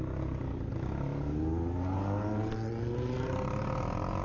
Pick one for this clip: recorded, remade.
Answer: recorded